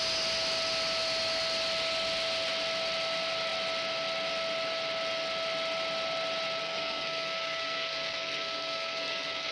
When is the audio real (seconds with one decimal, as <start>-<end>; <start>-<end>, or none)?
0.0-6.6